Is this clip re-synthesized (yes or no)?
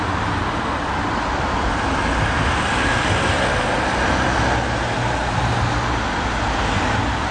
no